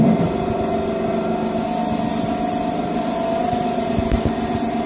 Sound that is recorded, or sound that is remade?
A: recorded